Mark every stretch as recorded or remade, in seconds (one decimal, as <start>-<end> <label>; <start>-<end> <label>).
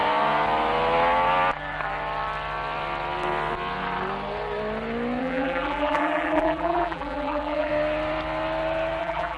0.0-5.2 recorded; 5.2-7.7 remade; 7.7-9.0 recorded; 9.0-9.4 remade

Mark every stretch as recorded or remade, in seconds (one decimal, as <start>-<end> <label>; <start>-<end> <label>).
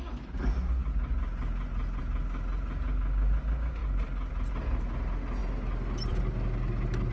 0.0-7.1 recorded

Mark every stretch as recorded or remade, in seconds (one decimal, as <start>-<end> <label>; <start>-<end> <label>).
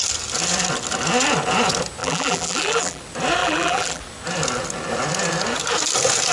0.0-2.0 recorded; 2.0-3.0 remade; 3.0-3.4 recorded; 3.4-4.0 remade; 4.0-6.3 recorded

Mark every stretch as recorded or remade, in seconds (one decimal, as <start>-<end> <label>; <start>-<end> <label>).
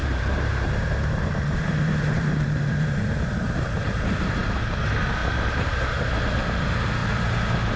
0.0-4.6 remade; 4.6-5.2 recorded; 5.2-6.0 remade; 6.0-7.0 recorded; 7.0-7.8 remade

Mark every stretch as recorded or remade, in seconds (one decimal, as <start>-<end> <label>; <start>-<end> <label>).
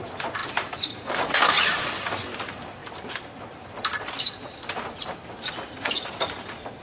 0.0-6.8 remade